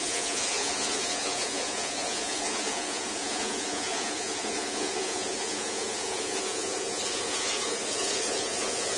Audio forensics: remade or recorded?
remade